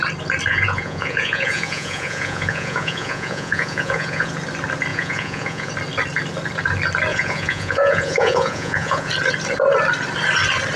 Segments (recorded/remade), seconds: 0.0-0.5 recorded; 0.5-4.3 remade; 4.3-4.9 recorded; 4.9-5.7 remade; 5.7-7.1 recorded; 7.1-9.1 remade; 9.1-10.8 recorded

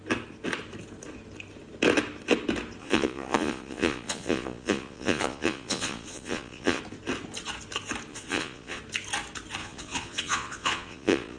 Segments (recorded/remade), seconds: 0.0-2.8 recorded; 2.8-6.8 remade; 6.8-8.1 recorded; 8.1-8.8 remade; 8.8-9.6 recorded; 9.6-11.4 remade

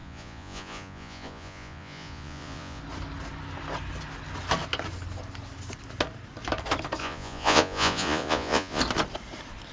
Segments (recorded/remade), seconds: 0.0-2.8 remade; 2.8-7.0 recorded; 7.0-8.8 remade; 8.8-9.7 recorded